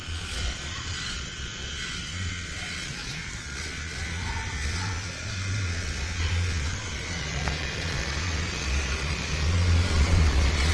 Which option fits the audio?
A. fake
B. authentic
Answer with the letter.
A